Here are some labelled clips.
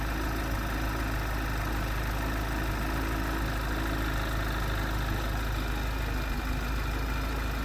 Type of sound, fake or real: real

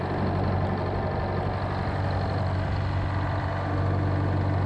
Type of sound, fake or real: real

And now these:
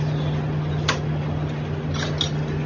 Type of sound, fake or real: real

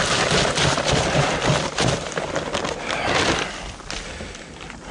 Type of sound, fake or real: real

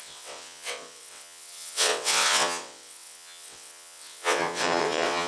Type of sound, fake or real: fake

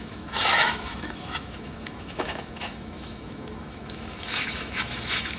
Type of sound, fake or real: fake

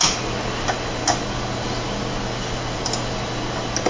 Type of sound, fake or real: real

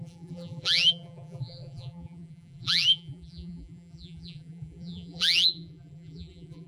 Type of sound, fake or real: fake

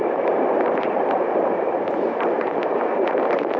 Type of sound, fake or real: real